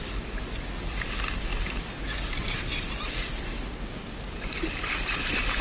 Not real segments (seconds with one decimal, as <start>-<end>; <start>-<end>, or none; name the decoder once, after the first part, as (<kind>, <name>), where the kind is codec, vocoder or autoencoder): none